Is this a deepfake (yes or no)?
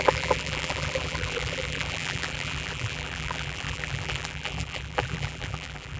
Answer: yes